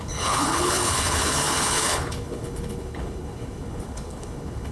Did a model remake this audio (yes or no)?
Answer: yes